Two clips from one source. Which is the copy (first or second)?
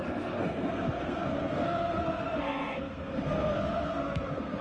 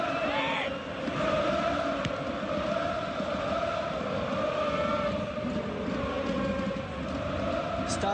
first